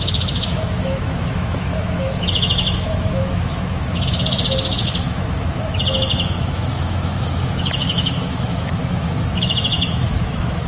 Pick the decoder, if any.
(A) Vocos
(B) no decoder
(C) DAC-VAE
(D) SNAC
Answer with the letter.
C